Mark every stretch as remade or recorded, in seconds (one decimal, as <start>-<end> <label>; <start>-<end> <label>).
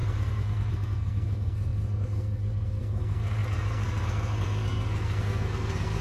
0.0-6.0 remade